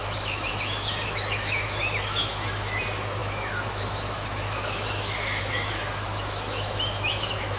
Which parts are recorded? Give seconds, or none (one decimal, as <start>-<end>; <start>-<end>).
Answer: none